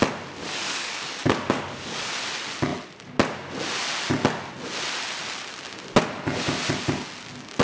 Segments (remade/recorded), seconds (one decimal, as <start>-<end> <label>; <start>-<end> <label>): 0.0-0.4 recorded; 0.4-2.1 remade; 2.1-7.6 recorded